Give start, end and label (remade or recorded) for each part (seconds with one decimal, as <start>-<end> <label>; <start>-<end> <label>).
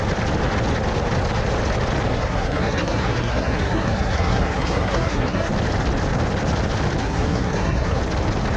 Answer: 0.0-2.1 recorded; 2.1-5.5 remade; 5.5-7.0 recorded; 7.0-8.0 remade; 8.0-8.6 recorded